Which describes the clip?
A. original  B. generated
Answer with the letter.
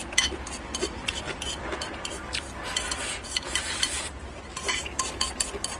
A